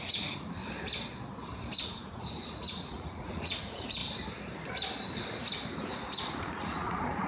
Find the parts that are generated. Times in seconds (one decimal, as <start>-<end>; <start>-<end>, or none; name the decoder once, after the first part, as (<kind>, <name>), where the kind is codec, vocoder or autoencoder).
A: 0.0-0.6 (vocoder, Vocos); 1.8-4.0; 5.8-7.3